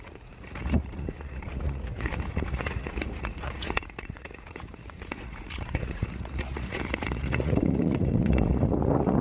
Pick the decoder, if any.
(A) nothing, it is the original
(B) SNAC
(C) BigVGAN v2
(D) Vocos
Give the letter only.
D